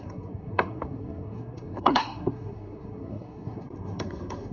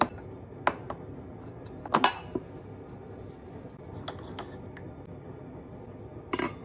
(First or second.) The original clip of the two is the second